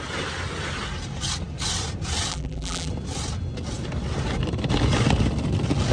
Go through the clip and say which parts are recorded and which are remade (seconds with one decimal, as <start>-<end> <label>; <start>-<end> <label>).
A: 0.0-2.3 recorded; 2.3-2.9 remade; 2.9-5.9 recorded